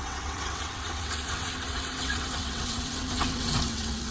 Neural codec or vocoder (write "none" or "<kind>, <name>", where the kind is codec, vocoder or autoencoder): vocoder, WaveNeXt